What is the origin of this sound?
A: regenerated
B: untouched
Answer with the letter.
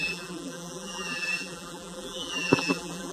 A